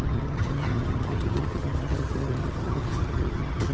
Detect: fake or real fake